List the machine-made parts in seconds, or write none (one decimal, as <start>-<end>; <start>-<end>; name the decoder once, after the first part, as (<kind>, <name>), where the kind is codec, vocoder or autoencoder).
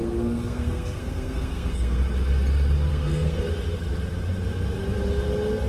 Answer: 0.0-2.0 (codec, SNAC); 2.9-3.4